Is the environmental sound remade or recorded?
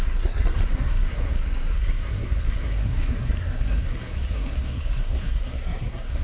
remade